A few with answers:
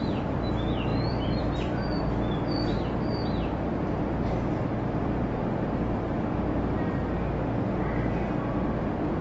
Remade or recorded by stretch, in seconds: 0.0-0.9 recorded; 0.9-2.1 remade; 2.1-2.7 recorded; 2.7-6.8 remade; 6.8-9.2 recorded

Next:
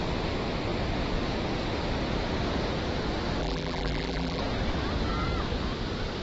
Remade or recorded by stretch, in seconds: 0.0-3.4 recorded; 3.4-4.4 remade; 4.4-6.2 recorded

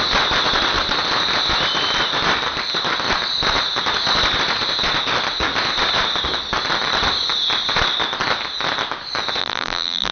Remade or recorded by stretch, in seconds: 0.0-9.4 recorded; 9.4-10.1 remade

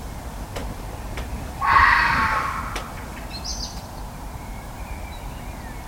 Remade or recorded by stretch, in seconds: 0.0-0.6 recorded; 0.6-2.6 remade; 2.6-5.9 recorded